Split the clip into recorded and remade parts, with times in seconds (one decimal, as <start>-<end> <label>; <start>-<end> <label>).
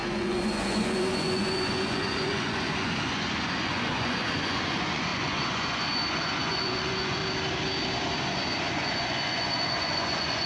0.0-7.2 remade; 7.2-8.2 recorded; 8.2-10.5 remade